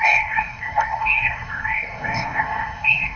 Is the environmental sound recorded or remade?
remade